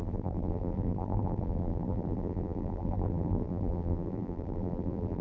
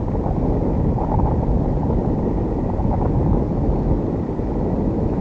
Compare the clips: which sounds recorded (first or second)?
second